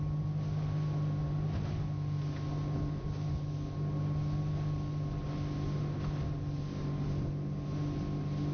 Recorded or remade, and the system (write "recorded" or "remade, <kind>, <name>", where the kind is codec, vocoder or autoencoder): recorded